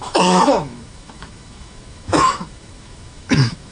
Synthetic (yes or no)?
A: yes